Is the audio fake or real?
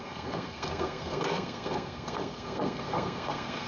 fake